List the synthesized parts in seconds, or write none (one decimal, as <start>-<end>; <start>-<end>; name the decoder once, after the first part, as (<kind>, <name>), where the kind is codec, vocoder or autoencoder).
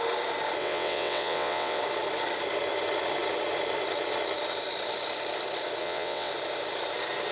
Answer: 0.6-1.8 (vocoder, WaveNeXt); 5.8-6.3